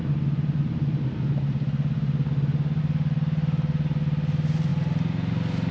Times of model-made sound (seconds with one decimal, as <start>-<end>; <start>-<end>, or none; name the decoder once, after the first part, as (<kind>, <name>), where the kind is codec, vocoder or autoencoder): none

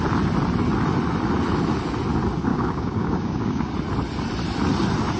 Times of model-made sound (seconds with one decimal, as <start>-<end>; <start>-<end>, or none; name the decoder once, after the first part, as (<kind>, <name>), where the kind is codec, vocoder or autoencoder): 2.5-3.7 (codec, DAC)

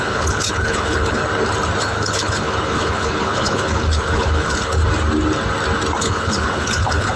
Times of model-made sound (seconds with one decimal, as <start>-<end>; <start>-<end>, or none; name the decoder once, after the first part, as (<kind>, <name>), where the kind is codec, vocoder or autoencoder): 0.0-1.2 (codec, HILCodec); 1.8-4.8; 6.0-7.2